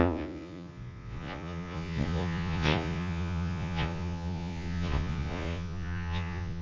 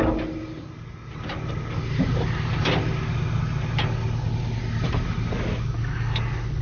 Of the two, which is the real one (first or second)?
second